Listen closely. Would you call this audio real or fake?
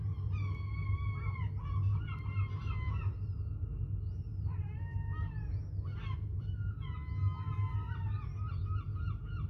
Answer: real